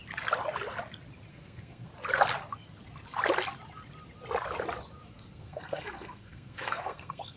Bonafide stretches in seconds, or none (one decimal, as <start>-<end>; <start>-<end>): 0.0-1.3; 1.9-5.1